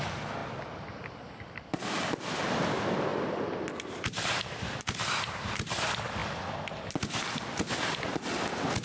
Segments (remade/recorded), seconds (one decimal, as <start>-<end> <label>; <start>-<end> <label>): 0.0-8.8 recorded